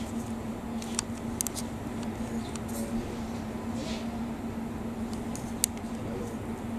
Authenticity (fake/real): real